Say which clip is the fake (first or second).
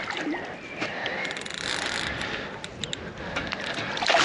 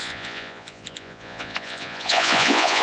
second